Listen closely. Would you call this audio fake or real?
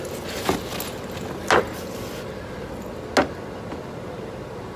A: real